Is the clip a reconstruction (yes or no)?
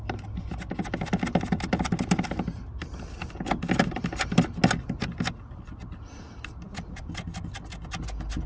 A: no